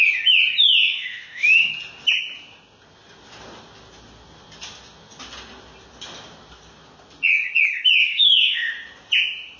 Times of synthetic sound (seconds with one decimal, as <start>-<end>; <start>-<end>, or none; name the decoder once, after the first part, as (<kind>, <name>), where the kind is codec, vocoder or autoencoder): 0.8-1.7 (autoencoder, DAC-VAE); 8.0-8.7